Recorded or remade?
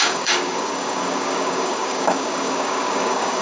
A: remade